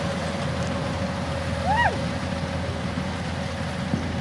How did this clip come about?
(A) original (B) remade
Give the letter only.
A